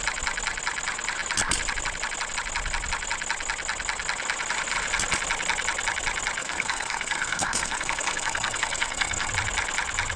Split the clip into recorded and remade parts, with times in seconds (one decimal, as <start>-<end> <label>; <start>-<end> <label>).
0.0-6.4 recorded; 6.4-9.3 remade; 9.3-10.2 recorded